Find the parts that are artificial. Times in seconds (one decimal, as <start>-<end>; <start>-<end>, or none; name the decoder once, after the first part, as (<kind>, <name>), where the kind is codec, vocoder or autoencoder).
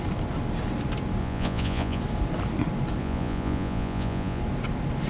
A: 1.2-2.0 (vocoder, Vocos); 3.0-4.4